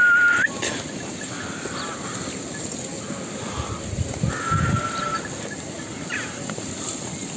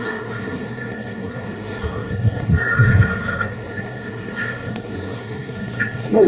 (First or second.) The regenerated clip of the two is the second